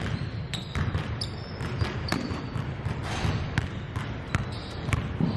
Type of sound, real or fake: real